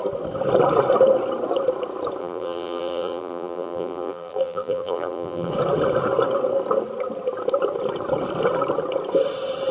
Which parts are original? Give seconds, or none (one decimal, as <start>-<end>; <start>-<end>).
0.0-2.2; 5.5-9.7